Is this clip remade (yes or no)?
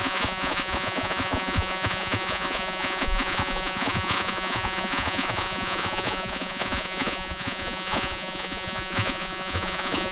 yes